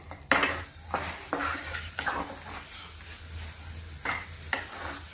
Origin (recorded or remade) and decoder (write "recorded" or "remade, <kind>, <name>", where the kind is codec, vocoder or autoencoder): recorded